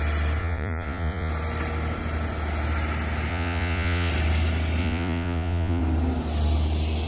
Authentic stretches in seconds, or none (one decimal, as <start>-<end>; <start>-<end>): 0.0-0.4; 1.3-3.3; 4.1-4.8; 5.8-7.1